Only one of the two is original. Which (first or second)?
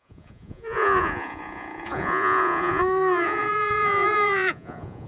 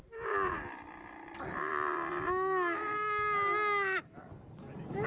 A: second